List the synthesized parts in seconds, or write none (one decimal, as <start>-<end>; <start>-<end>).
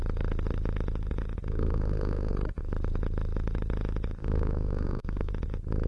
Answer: 1.5-2.3; 4.2-5.3